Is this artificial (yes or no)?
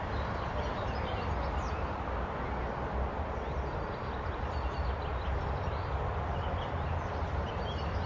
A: yes